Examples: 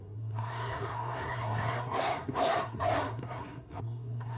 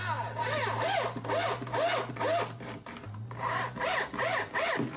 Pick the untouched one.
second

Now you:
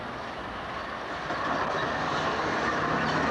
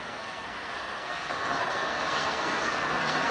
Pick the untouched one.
first